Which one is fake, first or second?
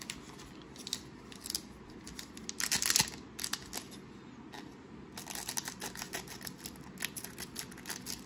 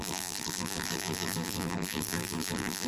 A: second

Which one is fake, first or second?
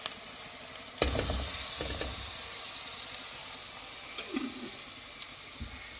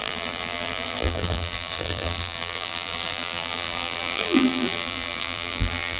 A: second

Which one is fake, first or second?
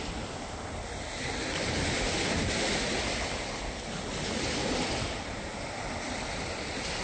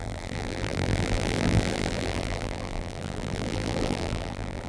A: second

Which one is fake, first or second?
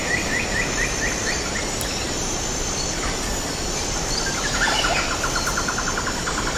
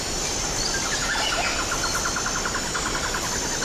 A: first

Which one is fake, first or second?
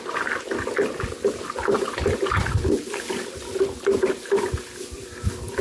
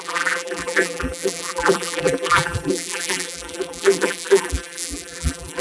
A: second